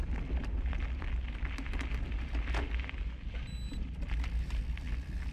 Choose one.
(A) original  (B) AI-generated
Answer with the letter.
A